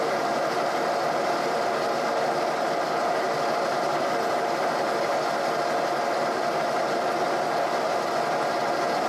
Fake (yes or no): no